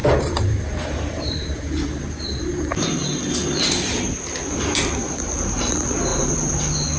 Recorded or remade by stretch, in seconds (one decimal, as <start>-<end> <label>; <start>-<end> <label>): 0.0-1.6 remade; 1.6-6.1 recorded; 6.1-6.6 remade; 6.6-7.0 recorded